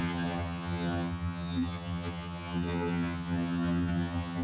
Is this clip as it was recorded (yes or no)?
no